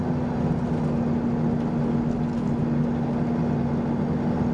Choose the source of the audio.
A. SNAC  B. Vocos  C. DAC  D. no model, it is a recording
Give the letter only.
D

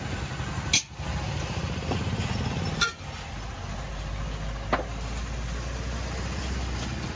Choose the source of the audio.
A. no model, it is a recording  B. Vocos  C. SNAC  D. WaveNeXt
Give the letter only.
A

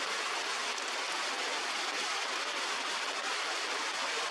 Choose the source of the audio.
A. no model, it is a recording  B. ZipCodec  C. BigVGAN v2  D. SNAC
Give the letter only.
A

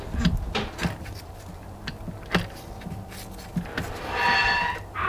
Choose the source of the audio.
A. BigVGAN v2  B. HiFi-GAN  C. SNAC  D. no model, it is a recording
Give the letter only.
D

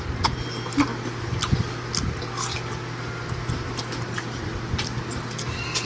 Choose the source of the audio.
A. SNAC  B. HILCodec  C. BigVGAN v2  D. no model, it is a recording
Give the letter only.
D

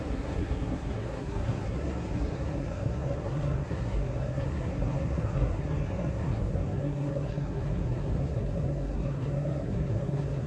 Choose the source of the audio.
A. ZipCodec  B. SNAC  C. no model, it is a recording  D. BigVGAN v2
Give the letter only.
B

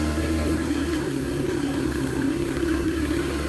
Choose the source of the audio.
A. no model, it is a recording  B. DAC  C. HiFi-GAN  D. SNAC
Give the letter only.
D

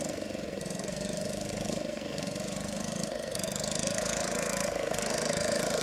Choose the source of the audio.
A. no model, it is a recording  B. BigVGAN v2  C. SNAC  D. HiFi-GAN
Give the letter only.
C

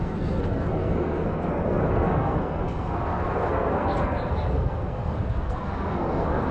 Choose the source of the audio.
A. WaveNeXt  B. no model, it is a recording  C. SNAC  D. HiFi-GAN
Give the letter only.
C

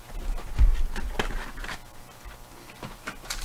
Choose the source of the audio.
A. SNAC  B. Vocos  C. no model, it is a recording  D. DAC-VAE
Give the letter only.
C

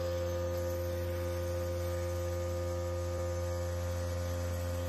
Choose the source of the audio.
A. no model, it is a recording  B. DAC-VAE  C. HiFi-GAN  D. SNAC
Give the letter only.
A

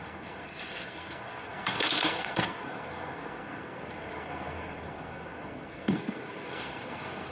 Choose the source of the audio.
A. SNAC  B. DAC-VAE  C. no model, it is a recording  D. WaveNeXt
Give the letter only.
A